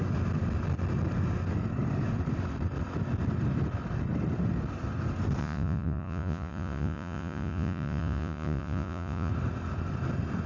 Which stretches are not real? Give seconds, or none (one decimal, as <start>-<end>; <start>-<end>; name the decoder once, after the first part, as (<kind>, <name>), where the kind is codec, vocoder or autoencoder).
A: 5.4-9.3 (vocoder, Vocos)